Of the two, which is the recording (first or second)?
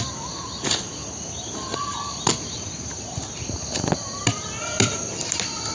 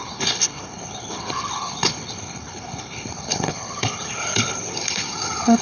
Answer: first